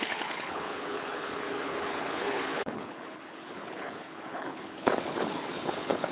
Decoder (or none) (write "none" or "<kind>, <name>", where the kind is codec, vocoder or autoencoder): codec, HILCodec